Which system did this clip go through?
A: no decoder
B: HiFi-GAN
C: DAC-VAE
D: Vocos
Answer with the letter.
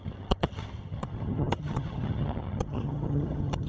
B